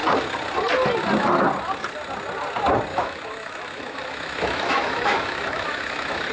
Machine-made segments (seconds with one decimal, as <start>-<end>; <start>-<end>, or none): 2.9-6.3